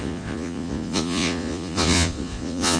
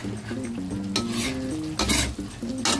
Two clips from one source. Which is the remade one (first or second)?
first